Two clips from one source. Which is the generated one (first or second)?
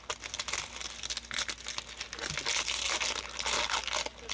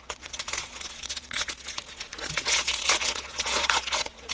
second